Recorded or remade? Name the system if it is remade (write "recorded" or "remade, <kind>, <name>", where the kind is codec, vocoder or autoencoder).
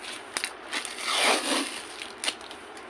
recorded